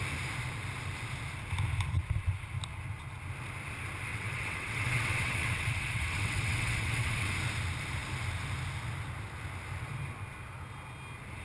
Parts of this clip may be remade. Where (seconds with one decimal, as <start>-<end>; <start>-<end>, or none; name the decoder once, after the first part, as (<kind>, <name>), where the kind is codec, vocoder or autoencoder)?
4.1-7.3 (vocoder, WaveNeXt)